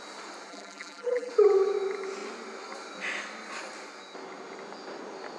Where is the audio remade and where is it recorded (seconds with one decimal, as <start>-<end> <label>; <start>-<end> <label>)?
0.0-0.5 recorded; 0.5-1.3 remade; 1.3-5.4 recorded